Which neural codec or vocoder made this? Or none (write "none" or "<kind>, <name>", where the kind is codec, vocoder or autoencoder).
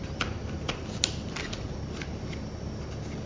none